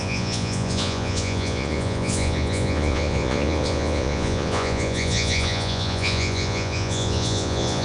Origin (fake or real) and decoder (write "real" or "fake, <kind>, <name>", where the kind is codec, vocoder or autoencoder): fake, vocoder, Vocos